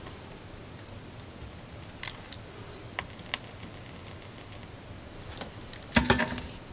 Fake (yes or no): no